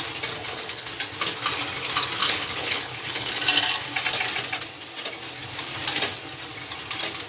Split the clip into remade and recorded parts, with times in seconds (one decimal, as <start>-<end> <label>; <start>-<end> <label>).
0.0-0.4 recorded; 0.4-0.9 remade; 0.9-2.2 recorded; 2.2-3.3 remade; 3.3-7.3 recorded